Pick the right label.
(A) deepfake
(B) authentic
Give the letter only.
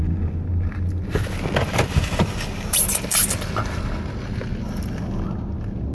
B